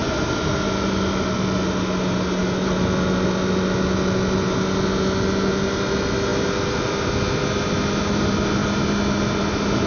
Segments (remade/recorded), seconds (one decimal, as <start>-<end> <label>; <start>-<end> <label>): 0.0-9.9 recorded